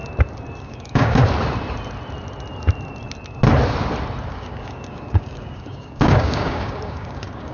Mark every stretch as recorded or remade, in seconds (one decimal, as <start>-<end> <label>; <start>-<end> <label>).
0.0-0.6 recorded; 0.6-1.2 remade; 1.2-4.3 recorded; 4.3-7.5 remade